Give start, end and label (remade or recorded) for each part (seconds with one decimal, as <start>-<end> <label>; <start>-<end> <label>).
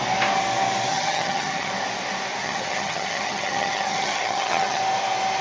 0.0-0.9 recorded; 0.9-1.7 remade; 1.7-2.4 recorded; 2.4-4.8 remade; 4.8-5.4 recorded